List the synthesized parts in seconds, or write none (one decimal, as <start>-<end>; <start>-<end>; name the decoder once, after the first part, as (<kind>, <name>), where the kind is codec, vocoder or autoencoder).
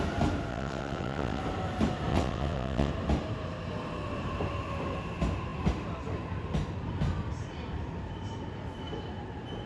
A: 0.5-1.4 (vocoder, WaveNeXt); 2.1-2.9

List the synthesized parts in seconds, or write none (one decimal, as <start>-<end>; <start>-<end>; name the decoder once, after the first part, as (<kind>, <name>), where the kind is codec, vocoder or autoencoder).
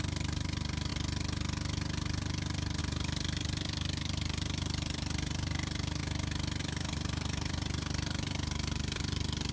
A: 0.0-0.9 (vocoder, BigVGAN v2); 2.8-6.0; 6.6-9.5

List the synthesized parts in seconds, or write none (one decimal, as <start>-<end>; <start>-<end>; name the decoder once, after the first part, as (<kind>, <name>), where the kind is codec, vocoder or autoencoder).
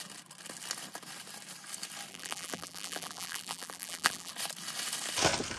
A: 2.1-4.3 (vocoder, BigVGAN v2)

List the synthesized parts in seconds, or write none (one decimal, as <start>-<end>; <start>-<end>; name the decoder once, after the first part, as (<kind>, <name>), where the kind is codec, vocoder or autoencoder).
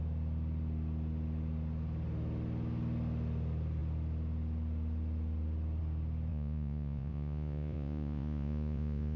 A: 6.3-9.2 (vocoder, Vocos)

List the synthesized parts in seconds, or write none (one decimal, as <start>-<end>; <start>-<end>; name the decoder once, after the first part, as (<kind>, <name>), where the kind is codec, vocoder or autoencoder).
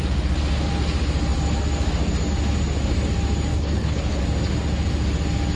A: 3.5-4.2 (codec, HILCodec)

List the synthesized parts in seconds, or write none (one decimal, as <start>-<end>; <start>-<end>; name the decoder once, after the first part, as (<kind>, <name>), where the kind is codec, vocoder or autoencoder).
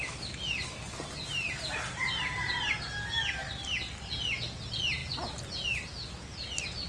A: none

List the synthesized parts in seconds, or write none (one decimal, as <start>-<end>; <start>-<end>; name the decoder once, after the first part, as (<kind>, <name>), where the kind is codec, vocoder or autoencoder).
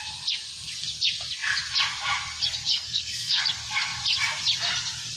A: 2.7-3.4 (codec, SNAC)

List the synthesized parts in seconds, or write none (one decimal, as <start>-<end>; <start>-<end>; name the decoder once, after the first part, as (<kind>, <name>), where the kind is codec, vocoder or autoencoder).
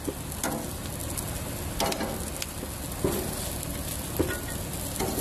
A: none